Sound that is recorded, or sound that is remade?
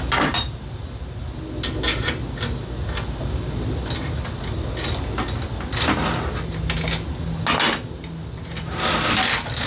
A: recorded